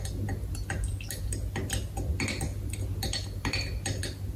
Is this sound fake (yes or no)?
no